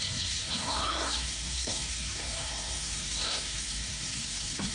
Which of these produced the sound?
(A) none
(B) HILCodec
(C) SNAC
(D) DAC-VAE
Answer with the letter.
C